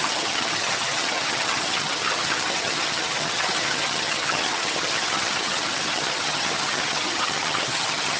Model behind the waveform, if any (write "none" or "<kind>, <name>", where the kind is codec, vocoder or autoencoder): vocoder, HiFi-GAN